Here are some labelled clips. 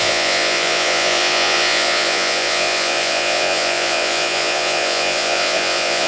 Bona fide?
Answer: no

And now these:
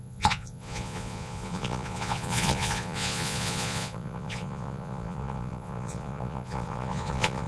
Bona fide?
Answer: no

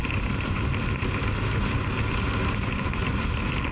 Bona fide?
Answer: yes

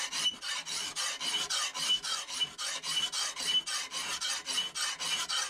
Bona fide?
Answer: yes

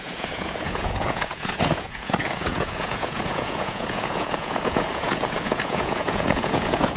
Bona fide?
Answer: no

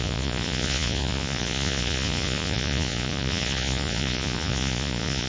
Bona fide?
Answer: no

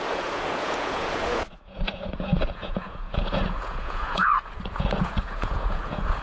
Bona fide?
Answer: no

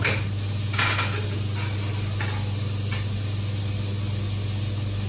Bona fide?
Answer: yes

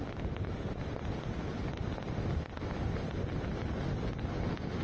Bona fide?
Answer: yes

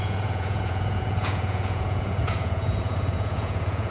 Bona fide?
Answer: no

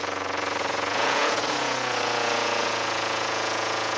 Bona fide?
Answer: no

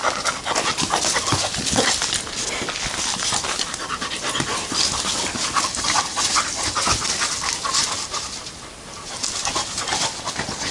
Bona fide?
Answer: yes